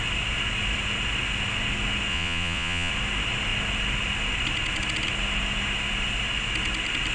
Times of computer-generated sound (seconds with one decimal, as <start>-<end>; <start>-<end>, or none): 2.1-2.9